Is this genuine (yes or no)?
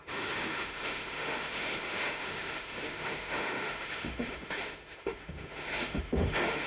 no